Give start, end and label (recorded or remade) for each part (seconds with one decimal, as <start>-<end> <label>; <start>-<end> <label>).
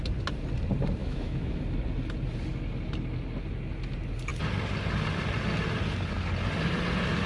0.0-1.0 recorded; 1.0-1.6 remade; 1.6-7.3 recorded